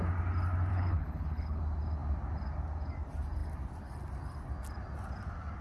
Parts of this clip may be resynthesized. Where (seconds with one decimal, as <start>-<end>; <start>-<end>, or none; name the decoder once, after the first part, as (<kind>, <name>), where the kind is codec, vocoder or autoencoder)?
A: 0.7-1.6 (codec, HILCodec)